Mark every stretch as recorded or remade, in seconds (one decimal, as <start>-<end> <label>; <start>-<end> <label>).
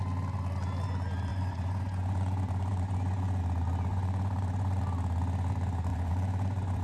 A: 0.0-1.3 recorded; 1.3-3.4 remade; 3.4-3.9 recorded; 3.9-4.8 remade; 4.8-5.9 recorded; 5.9-6.8 remade